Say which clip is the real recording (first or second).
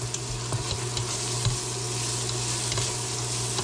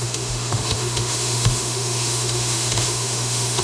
first